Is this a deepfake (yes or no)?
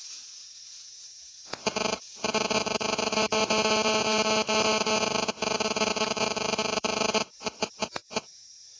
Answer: yes